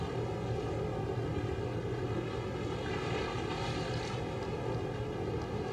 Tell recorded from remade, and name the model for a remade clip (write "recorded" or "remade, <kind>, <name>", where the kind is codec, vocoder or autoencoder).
recorded